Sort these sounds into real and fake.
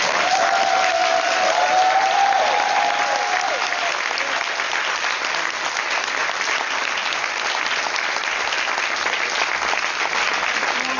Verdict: real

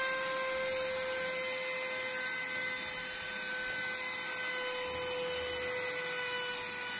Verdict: real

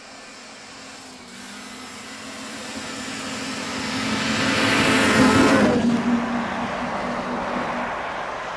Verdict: real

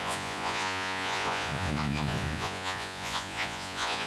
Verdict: fake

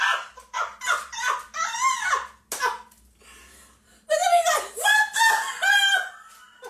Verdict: real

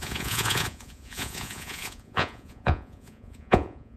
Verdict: fake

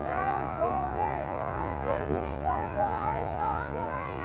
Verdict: fake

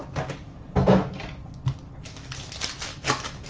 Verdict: real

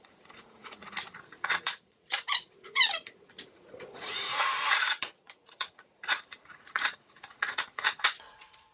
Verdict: fake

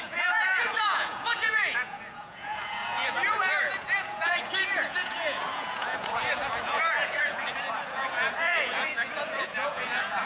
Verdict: fake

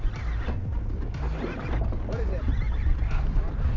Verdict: real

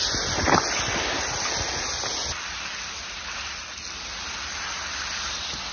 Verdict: real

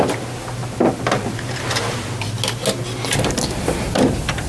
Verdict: real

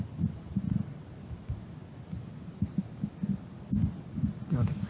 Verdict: real